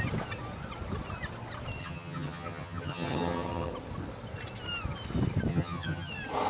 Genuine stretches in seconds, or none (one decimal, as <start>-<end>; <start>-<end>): 0.0-1.8; 3.7-5.5; 6.1-6.5

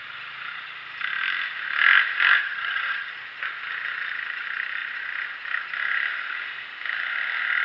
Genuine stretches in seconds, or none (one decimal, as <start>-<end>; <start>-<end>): 0.0-2.4; 3.1-7.6

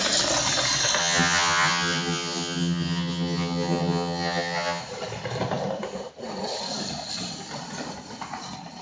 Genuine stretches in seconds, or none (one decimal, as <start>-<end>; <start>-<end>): 0.0-1.0; 4.8-8.8

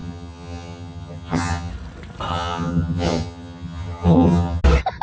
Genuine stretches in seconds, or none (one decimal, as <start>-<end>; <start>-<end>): 1.7-2.3; 4.6-5.0

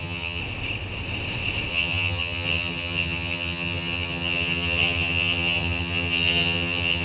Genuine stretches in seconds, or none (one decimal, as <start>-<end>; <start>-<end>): 0.4-1.7